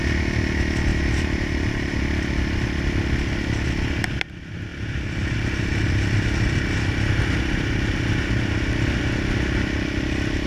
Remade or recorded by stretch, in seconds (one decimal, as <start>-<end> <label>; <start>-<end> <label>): 0.0-0.9 recorded; 0.9-2.0 remade; 2.0-10.5 recorded